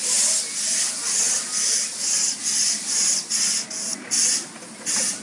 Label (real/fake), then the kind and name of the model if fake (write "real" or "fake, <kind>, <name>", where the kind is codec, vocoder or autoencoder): real